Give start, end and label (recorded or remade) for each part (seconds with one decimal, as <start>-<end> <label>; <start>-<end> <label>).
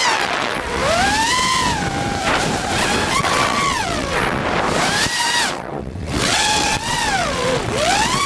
0.0-0.8 remade; 0.8-3.1 recorded; 3.1-4.4 remade; 4.4-5.5 recorded; 5.5-8.3 remade